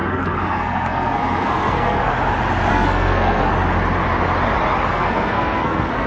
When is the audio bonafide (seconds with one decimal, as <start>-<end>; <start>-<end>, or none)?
2.1-2.7; 3.5-4.9